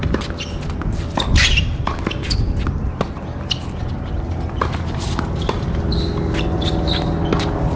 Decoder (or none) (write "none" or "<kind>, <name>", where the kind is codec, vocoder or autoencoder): none